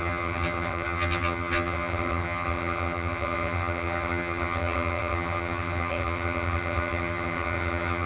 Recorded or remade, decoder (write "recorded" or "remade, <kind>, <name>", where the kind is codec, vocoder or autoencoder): remade, vocoder, HiFi-GAN